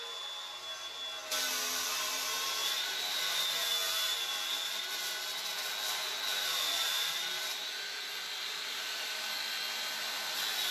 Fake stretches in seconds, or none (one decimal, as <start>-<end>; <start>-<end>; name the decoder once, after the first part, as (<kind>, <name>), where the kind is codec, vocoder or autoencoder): 2.6-3.2 (vocoder, BigVGAN v2); 6.3-9.3